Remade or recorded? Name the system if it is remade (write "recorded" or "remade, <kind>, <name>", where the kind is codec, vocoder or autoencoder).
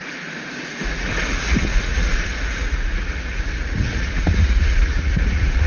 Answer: remade, vocoder, Vocos